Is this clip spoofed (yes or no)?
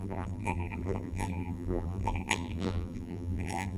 yes